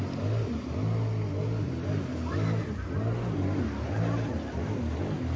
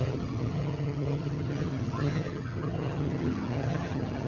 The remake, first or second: second